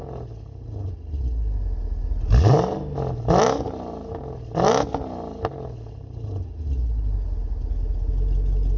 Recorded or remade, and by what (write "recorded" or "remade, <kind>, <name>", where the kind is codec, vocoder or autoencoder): recorded